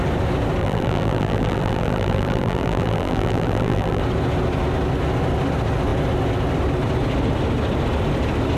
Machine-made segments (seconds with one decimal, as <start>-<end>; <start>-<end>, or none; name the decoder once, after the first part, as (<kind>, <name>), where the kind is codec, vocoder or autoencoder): 0.6-4.0 (vocoder, BigVGAN v2)